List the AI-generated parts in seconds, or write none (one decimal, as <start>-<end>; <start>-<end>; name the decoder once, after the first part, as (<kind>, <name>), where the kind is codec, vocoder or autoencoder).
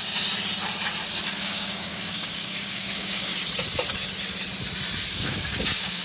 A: 1.4-3.3 (codec, DAC); 5.1-6.0